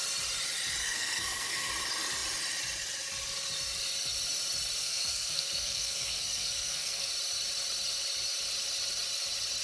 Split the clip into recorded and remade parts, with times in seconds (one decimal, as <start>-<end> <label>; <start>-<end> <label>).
0.0-0.8 recorded; 0.8-1.7 remade; 1.7-4.8 recorded; 4.8-7.1 remade; 7.1-9.6 recorded